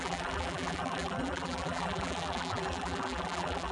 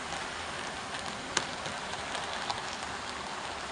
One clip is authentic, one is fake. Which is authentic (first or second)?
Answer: second